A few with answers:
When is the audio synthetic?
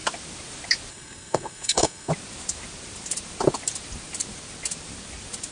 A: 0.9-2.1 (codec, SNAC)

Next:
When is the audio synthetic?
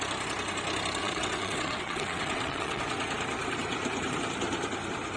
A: 1.0-2.8 (vocoder, WaveNeXt)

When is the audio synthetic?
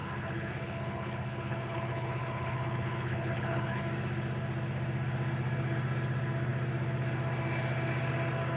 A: 0.0-3.8 (codec, HILCodec)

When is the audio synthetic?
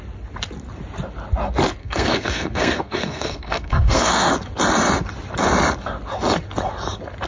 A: 1.8-4.3 (codec, SNAC)